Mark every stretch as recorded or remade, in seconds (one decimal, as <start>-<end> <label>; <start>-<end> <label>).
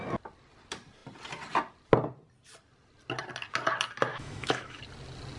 0.0-4.1 recorded; 4.1-4.8 remade; 4.8-5.4 recorded